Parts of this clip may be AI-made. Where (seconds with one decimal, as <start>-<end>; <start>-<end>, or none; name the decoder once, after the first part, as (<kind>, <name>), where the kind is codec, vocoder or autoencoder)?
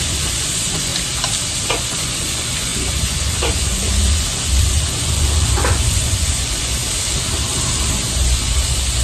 0.0-0.9 (vocoder, Vocos); 1.6-6.8; 7.9-9.0